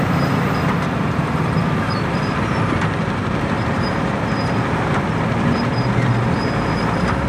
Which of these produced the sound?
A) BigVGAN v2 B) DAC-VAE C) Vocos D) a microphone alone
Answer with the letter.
A